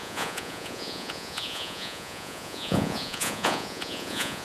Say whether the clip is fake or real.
fake